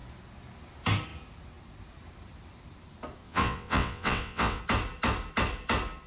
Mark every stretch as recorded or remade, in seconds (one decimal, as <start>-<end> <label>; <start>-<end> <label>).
0.0-3.2 recorded; 3.2-4.6 remade; 4.6-6.1 recorded